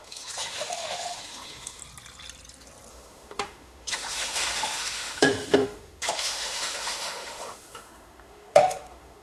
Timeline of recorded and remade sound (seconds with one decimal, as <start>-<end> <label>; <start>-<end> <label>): 0.0-1.8 remade; 1.8-2.9 recorded; 2.9-9.2 remade